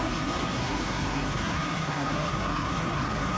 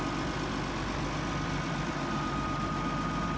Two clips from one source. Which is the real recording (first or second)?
second